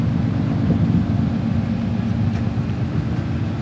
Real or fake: real